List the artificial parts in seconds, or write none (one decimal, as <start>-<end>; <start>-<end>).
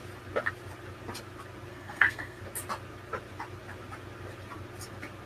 1.7-2.4